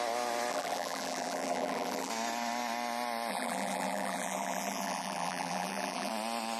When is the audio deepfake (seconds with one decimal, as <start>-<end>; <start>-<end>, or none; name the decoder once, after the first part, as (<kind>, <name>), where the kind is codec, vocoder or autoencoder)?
0.5-2.1 (vocoder, BigVGAN v2); 3.3-6.1